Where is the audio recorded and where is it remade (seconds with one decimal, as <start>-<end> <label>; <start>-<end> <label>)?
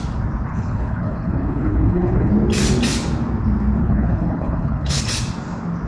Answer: 0.0-0.5 recorded; 0.5-2.3 remade; 2.3-3.8 recorded; 3.8-5.0 remade; 5.0-5.9 recorded